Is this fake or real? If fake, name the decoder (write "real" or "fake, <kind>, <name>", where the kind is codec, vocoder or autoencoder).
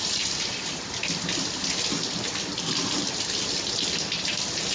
fake, vocoder, BigVGAN v2